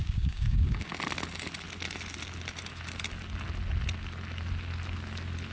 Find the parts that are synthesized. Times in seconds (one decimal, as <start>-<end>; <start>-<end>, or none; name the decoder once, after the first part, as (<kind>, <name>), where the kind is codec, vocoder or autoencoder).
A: 0.0-0.9 (codec, DAC)